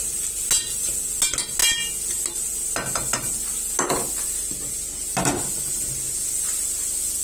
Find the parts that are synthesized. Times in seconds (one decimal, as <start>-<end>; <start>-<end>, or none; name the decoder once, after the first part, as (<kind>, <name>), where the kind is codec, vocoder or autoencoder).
none